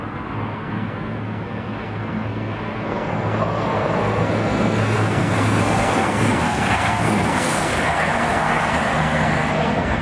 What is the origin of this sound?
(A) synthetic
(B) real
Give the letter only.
A